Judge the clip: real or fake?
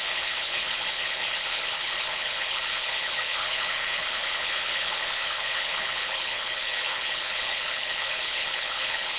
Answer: fake